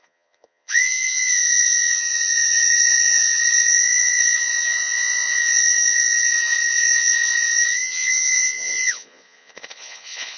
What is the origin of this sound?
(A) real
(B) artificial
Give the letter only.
B